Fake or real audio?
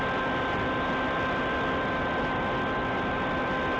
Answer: real